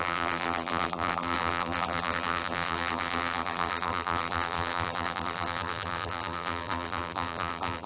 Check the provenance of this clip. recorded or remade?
remade